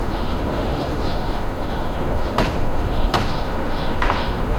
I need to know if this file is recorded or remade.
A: remade